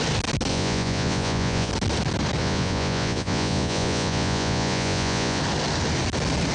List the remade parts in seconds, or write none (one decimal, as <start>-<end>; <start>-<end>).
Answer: 0.5-1.7; 2.4-5.4